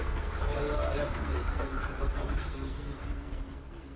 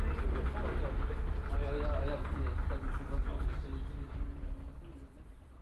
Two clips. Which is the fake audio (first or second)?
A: first